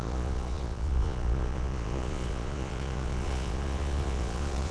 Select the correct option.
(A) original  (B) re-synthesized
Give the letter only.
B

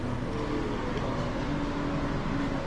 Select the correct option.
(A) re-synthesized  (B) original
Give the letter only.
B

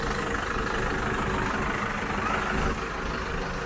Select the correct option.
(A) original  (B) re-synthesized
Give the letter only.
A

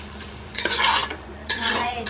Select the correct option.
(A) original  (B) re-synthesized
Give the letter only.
B